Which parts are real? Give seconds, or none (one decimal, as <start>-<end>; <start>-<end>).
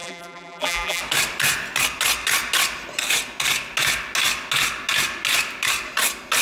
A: 1.0-6.4